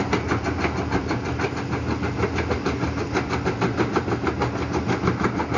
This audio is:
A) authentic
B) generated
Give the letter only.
A